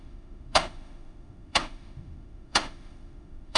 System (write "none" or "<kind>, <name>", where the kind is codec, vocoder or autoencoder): autoencoder, DAC-VAE